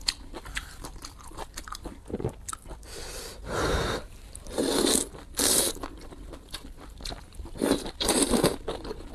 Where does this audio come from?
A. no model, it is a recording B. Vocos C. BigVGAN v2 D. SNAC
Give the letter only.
C